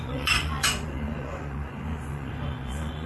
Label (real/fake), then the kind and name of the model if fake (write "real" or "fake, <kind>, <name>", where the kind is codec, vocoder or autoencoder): fake, vocoder, Vocos